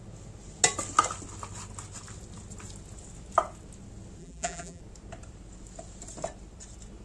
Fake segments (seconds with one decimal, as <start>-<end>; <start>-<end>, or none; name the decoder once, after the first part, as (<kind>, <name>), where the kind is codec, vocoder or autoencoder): 4.2-4.8 (vocoder, BigVGAN v2)

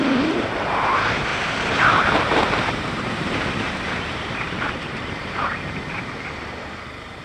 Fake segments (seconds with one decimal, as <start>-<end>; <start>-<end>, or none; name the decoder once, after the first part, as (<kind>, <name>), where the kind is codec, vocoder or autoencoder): 0.0-7.2 (vocoder, BigVGAN v2)

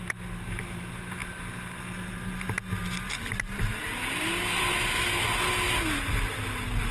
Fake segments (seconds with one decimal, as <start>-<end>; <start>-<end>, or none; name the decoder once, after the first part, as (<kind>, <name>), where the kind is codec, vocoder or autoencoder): none

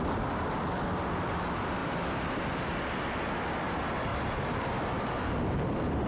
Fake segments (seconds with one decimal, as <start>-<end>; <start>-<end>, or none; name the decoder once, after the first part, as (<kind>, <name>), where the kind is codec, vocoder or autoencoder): 4.1-6.1 (vocoder, BigVGAN v2)